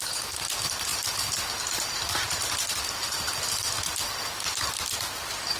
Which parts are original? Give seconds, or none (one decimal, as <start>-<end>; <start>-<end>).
0.0-5.6